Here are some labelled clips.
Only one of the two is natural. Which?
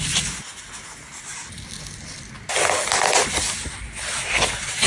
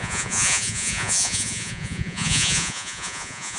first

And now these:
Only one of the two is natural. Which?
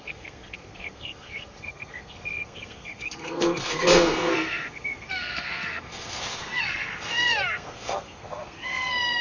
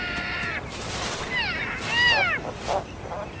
second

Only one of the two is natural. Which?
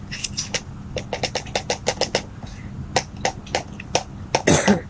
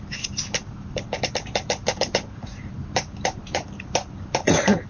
first